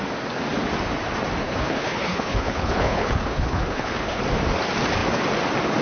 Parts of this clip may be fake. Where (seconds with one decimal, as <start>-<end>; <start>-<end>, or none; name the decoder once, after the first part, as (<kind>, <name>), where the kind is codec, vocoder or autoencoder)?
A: 1.4-4.2 (codec, HILCodec)